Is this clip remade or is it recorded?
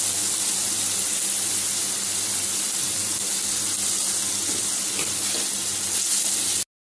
recorded